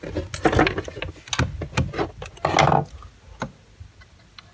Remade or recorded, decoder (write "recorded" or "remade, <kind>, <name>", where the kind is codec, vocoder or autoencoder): recorded